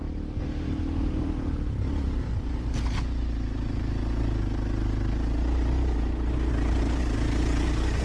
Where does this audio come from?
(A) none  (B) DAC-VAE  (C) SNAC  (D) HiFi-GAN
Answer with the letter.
A